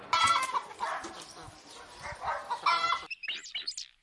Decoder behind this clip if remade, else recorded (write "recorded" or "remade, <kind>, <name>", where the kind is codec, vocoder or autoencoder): recorded